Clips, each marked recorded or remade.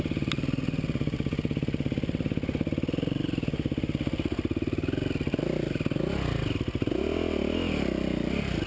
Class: recorded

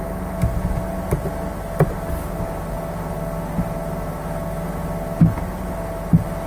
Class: recorded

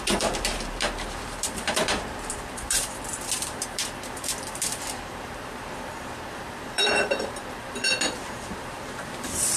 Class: remade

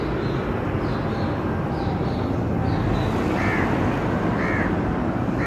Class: recorded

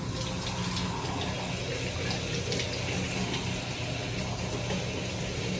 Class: recorded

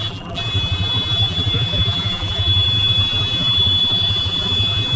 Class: remade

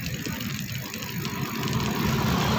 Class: recorded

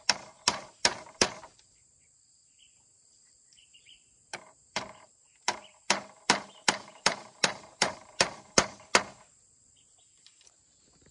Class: remade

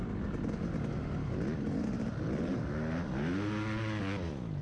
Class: recorded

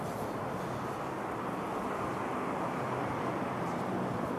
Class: recorded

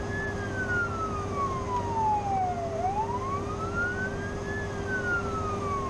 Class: recorded